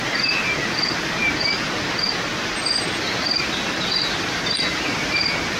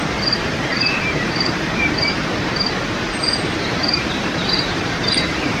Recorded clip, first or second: first